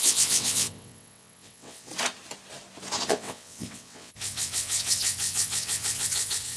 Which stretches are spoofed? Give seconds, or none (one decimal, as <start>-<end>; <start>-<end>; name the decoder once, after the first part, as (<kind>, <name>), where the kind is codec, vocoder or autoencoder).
0.0-1.9 (vocoder, WaveNeXt); 3.1-6.6